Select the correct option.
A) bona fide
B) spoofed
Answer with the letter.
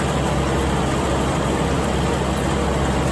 A